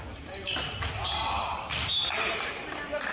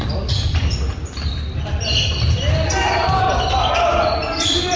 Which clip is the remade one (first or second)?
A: first